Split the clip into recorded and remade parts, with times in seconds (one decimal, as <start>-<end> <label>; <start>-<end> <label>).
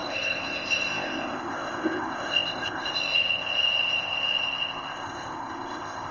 0.0-6.1 remade